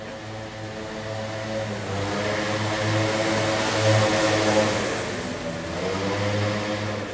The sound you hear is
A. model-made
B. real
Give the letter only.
B